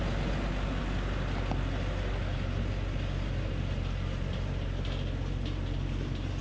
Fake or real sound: real